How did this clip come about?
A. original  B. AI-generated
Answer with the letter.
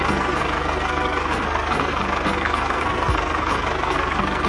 B